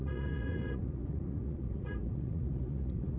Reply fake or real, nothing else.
fake